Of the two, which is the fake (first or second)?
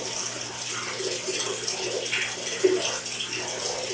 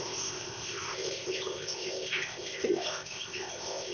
second